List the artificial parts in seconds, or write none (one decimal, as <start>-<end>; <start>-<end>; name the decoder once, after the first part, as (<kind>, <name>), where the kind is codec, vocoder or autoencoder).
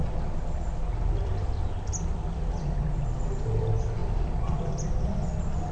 none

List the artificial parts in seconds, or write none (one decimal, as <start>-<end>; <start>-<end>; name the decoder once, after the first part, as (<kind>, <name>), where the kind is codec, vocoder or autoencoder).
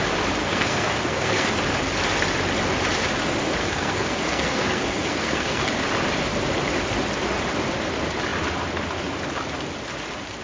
0.4-1.5 (codec, SNAC); 3.6-5.7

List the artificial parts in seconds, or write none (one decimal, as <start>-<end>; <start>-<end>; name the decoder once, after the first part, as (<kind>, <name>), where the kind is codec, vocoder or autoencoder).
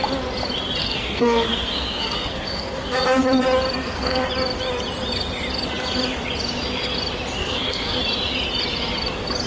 0.8-3.2 (codec, SNAC); 3.8-4.3; 7.4-8.0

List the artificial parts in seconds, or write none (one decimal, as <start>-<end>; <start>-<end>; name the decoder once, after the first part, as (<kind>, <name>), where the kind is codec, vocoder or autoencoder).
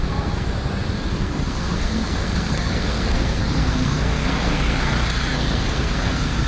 0.0-0.5 (codec, SNAC); 1.1-6.5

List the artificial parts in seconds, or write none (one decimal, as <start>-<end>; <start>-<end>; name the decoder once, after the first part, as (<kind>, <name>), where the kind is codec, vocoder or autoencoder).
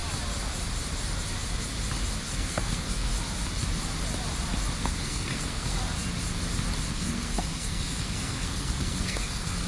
2.3-3.1 (codec, SNAC); 4.8-5.8; 6.9-9.7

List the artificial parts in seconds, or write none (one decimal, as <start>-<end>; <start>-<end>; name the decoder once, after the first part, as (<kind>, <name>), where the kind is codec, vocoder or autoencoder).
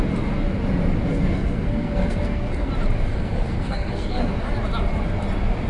1.1-2.7 (codec, SNAC); 3.1-4.3